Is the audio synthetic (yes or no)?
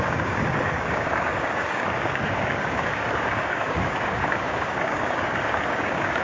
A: yes